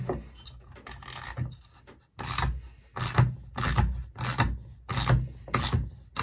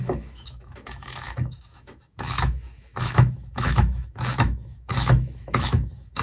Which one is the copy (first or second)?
second